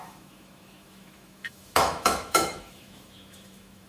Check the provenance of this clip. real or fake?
fake